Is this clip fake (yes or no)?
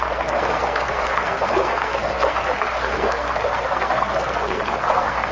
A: yes